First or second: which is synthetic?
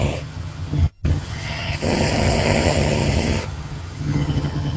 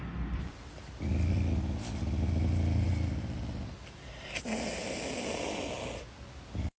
first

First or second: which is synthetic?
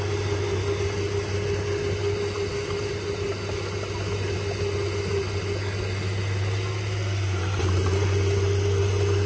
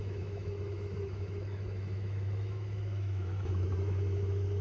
second